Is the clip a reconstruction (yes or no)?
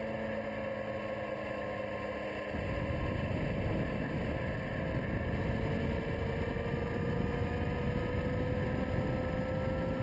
no